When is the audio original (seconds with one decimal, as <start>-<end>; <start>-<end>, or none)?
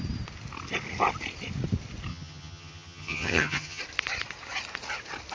0.0-2.1; 3.8-5.3